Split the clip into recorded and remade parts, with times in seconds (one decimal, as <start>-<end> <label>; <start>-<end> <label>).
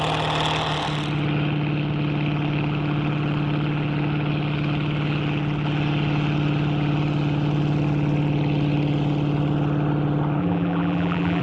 0.0-10.4 recorded; 10.4-11.4 remade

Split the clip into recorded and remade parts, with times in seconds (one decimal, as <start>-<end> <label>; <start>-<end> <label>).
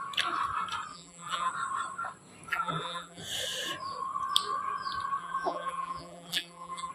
0.0-0.9 recorded; 0.9-1.5 remade; 1.5-2.5 recorded; 2.5-3.2 remade; 3.2-5.2 recorded; 5.2-6.9 remade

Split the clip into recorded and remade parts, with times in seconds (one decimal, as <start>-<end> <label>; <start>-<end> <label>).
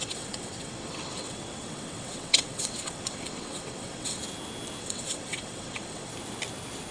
0.0-4.2 remade; 4.2-4.8 recorded; 4.8-6.1 remade; 6.1-6.9 recorded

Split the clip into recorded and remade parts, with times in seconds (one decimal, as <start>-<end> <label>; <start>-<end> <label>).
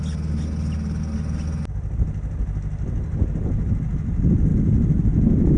0.0-5.6 recorded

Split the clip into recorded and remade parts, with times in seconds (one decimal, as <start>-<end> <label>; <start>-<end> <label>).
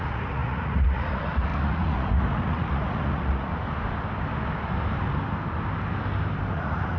0.0-3.5 remade; 3.5-6.5 recorded; 6.5-7.0 remade